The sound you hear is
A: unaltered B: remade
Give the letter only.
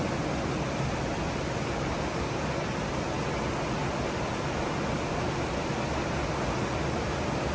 A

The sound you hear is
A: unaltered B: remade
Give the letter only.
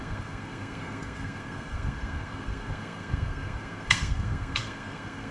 B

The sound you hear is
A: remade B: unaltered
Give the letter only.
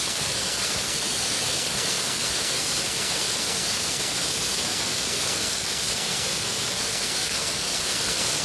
A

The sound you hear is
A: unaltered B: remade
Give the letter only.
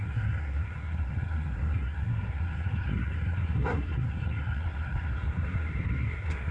B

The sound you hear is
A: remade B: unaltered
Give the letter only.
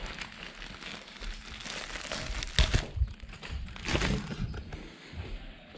B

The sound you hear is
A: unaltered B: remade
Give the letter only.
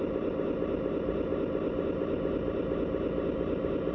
A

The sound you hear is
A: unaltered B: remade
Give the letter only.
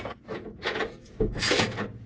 B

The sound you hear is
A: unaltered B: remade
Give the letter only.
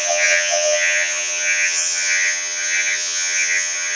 B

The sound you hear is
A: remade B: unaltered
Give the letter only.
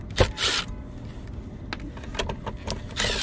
B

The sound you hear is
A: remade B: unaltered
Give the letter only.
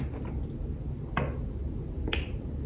B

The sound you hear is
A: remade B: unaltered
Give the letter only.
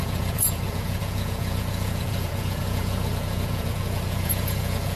A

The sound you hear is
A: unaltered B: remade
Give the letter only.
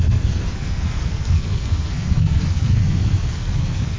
B